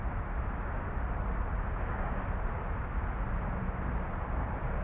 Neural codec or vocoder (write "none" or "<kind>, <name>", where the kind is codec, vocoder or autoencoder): none